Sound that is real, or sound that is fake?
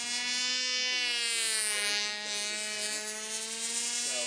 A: real